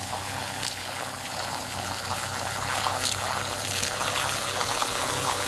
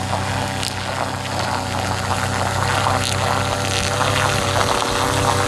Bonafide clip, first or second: second